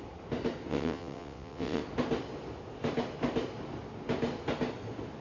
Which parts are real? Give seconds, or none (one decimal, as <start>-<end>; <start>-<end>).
0.0-0.7; 1.8-5.2